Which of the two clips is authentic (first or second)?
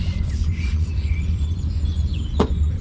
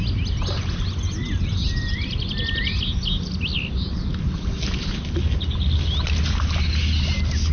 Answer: second